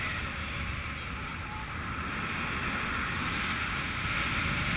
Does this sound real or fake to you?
real